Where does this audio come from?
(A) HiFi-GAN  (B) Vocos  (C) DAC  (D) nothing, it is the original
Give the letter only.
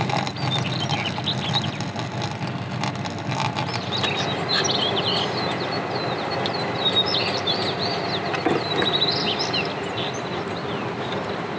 D